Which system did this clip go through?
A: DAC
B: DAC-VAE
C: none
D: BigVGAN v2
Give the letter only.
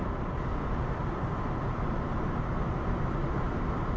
C